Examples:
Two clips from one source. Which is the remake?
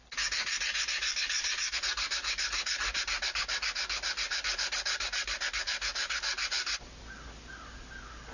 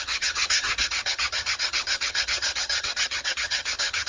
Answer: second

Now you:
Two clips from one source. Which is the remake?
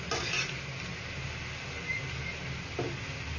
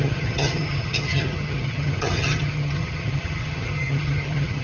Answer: second